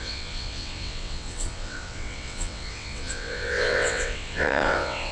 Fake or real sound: fake